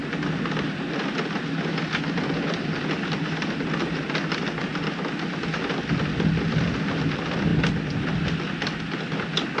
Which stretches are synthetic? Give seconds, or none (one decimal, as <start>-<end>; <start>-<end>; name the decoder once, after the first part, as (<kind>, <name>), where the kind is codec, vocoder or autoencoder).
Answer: none